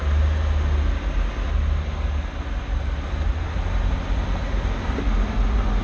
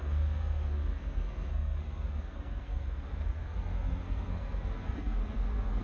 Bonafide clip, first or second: first